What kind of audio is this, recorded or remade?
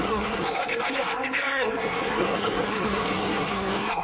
remade